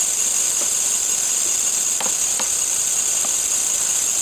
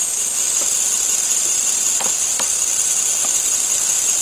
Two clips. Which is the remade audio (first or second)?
second